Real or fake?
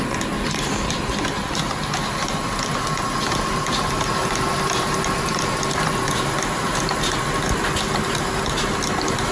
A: real